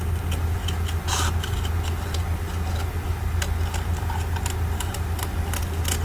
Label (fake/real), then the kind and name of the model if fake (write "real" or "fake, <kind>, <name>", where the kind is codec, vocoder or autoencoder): real